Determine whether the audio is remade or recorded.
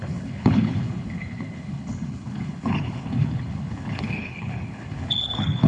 remade